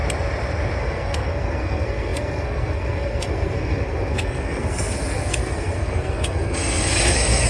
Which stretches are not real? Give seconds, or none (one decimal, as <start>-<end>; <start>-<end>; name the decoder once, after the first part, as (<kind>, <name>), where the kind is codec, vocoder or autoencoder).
0.8-7.5 (codec, SNAC)